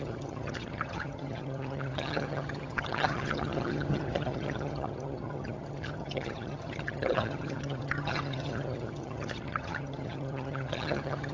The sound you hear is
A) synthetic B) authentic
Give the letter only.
A